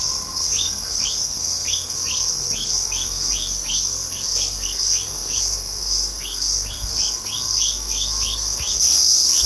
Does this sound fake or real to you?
fake